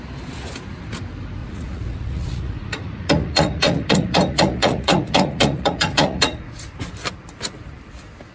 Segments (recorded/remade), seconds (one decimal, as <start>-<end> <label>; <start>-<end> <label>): 0.0-1.4 recorded; 1.4-6.4 remade; 6.4-8.3 recorded